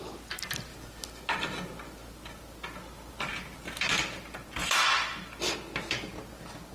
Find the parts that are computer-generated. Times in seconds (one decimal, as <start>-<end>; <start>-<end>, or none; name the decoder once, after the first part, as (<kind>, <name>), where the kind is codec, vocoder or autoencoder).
none